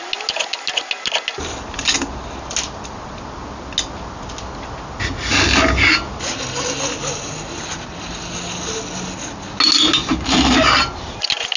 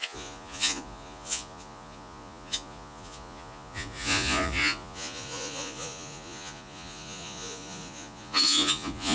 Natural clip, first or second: first